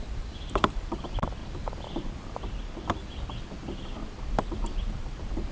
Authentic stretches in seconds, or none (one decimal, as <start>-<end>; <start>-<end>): 1.4-4.7